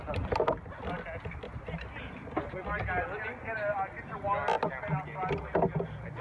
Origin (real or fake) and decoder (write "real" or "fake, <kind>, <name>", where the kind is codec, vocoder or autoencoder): real